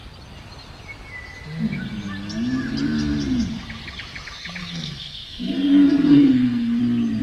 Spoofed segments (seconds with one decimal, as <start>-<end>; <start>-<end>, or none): 4.6-6.8